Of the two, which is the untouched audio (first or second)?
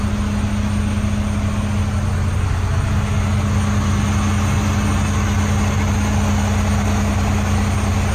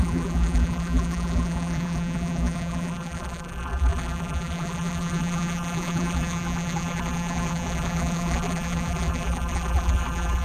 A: first